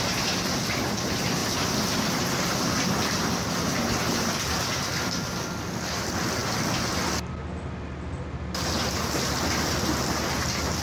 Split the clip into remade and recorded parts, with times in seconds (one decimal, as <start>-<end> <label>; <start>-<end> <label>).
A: 0.0-10.8 recorded